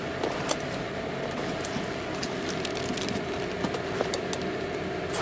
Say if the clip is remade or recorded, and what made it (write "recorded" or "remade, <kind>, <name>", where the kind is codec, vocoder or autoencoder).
recorded